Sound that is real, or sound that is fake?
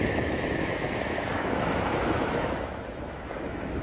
fake